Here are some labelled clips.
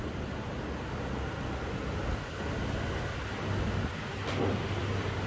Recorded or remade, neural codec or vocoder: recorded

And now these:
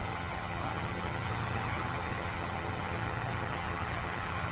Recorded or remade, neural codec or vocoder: remade, vocoder, HiFi-GAN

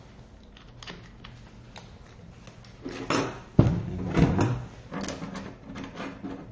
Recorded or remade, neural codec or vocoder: recorded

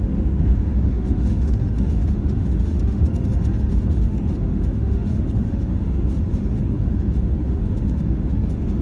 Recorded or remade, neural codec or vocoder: remade, autoencoder, DAC-VAE